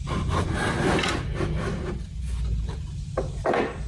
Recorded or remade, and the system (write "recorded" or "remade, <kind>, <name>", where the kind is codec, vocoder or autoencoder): recorded